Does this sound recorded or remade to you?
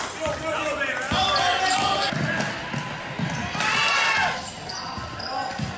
recorded